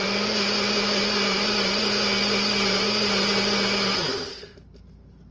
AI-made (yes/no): no